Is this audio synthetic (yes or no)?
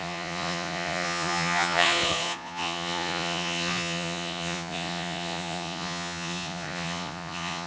yes